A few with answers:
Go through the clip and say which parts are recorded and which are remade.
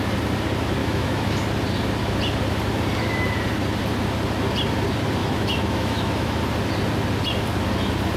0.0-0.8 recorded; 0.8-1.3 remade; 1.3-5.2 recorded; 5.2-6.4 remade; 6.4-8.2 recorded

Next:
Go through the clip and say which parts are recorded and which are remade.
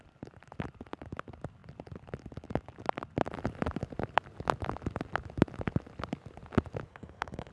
0.0-6.9 recorded; 6.9-7.5 remade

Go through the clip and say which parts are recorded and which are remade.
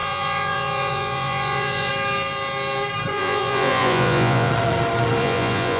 0.0-1.9 remade; 1.9-3.1 recorded; 3.1-4.5 remade; 4.5-5.2 recorded; 5.2-5.8 remade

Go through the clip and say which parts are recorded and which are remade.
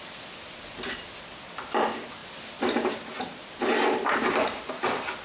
0.0-5.2 recorded